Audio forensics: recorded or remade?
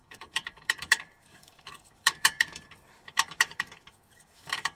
remade